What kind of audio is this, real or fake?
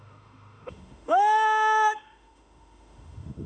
fake